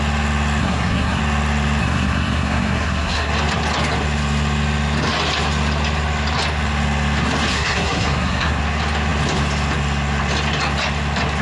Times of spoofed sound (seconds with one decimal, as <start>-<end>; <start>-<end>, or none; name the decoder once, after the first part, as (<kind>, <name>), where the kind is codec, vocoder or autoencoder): 0.6-1.2 (codec, SNAC); 1.8-3.3; 7.5-8.6